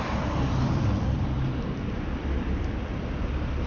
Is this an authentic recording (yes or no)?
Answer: no